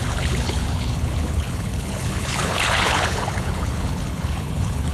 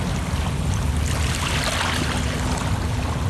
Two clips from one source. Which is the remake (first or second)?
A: first